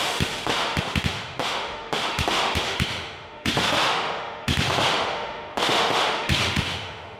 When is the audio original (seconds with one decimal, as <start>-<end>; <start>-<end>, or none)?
none